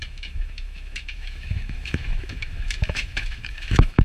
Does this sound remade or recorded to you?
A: remade